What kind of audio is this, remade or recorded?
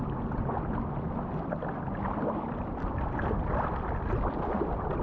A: recorded